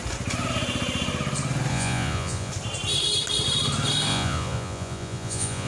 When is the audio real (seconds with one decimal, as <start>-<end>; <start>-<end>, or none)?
0.0-1.7; 2.5-4.1